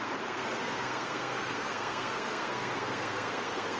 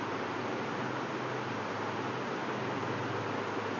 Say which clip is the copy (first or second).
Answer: first